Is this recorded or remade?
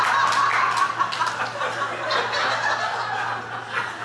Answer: recorded